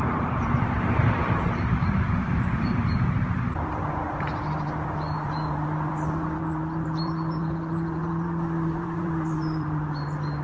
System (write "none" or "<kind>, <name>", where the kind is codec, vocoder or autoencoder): vocoder, BigVGAN v2